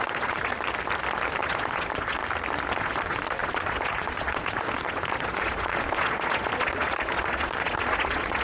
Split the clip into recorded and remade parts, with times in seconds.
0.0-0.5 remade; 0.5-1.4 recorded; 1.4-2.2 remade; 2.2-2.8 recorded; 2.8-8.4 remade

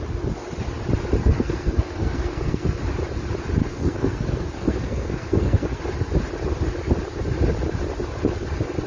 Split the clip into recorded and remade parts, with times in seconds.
0.0-1.2 recorded; 1.2-2.8 remade; 2.8-3.6 recorded; 3.6-5.8 remade; 5.8-8.9 recorded

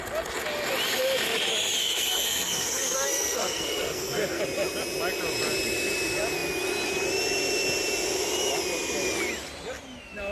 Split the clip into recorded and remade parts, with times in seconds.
0.0-1.8 recorded; 1.8-4.4 remade; 4.4-10.3 recorded

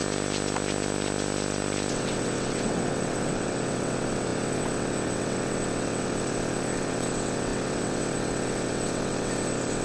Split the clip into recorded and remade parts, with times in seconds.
0.0-1.9 recorded; 1.9-9.8 remade

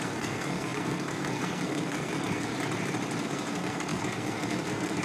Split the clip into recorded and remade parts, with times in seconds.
0.0-2.5 remade; 2.5-3.2 recorded; 3.2-5.0 remade